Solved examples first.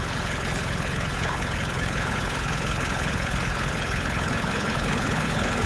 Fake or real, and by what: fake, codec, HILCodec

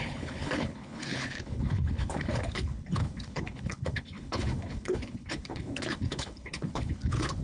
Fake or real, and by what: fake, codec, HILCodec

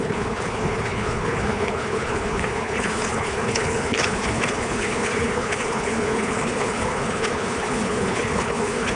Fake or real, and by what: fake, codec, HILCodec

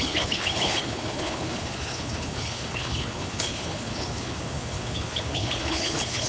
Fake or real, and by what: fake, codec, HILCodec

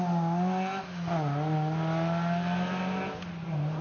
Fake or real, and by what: real